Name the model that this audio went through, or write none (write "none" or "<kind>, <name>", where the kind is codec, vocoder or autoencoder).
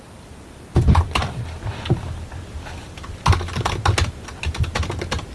none